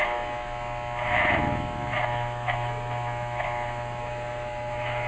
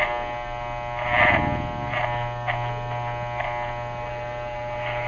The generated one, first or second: first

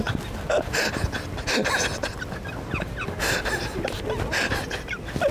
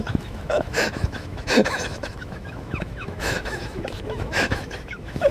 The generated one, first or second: second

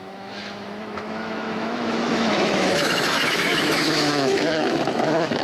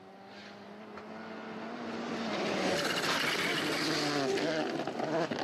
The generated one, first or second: first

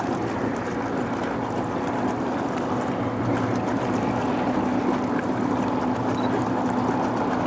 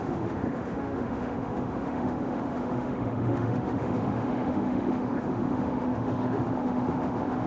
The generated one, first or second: second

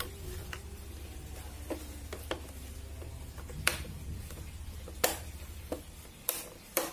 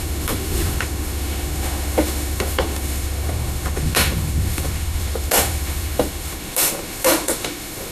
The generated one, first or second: second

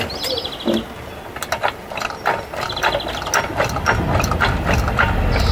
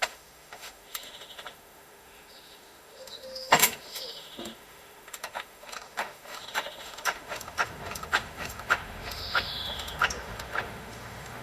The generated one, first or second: second